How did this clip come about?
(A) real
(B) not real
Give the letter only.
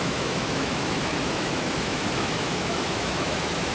B